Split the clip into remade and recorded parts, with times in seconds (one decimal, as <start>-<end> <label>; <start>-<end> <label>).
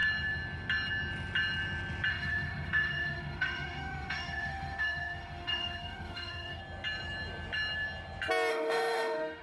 0.0-2.1 recorded; 2.1-6.6 remade; 6.6-8.5 recorded; 8.5-9.4 remade